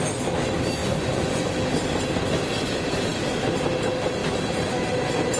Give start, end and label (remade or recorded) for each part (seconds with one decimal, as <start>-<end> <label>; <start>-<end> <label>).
0.0-0.8 recorded; 0.8-1.5 remade; 1.5-5.4 recorded